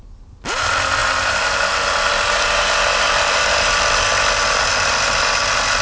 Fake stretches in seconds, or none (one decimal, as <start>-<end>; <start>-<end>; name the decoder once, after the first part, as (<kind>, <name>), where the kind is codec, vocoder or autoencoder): none